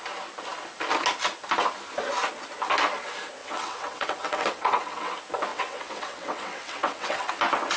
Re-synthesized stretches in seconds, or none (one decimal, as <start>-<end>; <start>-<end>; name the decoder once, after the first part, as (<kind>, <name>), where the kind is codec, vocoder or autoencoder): 3.4-5.1 (vocoder, WaveNeXt); 5.5-7.3